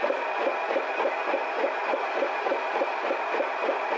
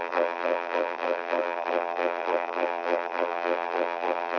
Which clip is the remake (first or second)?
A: second